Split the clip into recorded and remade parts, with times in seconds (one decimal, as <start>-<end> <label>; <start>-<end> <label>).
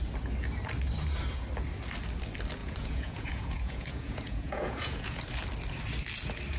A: 0.0-2.6 recorded; 2.6-5.2 remade; 5.2-6.6 recorded